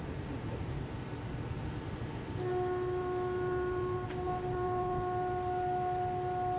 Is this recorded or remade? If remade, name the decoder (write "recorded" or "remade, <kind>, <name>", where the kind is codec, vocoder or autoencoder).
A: recorded